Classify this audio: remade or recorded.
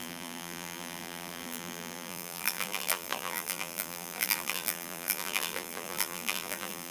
remade